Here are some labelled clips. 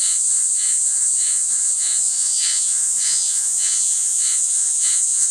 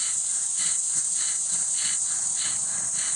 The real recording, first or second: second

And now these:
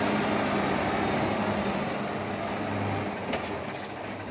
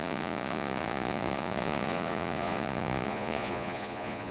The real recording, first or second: first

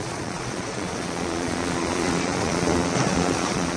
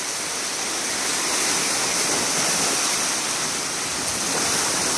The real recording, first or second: second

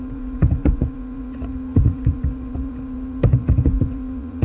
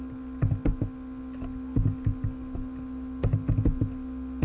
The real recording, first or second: second